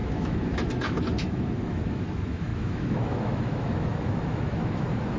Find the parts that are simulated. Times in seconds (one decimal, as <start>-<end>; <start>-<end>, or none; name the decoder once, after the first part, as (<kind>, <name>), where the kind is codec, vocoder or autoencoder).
0.0-5.2 (autoencoder, DAC-VAE)